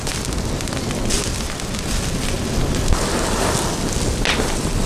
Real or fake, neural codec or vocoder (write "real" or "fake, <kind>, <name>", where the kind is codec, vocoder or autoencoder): real